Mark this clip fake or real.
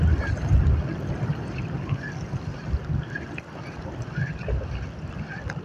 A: real